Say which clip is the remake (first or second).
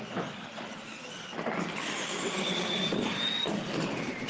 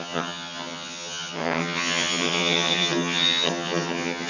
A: second